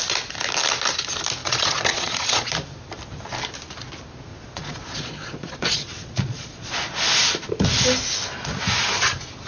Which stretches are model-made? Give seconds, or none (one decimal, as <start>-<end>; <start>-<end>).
1.4-2.5; 4.3-6.9